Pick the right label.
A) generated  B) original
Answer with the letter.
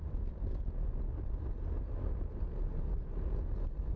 B